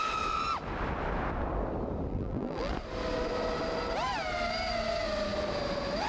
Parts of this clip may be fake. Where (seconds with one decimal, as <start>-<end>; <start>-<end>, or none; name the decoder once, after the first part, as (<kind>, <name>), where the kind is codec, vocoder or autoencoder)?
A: 2.1-2.7 (vocoder, BigVGAN v2)